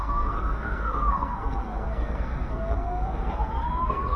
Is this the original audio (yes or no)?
no